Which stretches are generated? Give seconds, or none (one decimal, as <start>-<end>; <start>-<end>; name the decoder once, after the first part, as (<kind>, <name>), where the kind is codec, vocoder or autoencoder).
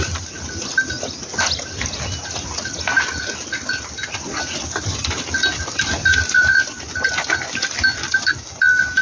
5.5-8.6 (vocoder, BigVGAN v2)